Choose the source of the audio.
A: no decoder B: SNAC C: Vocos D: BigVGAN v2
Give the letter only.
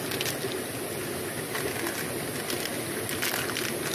A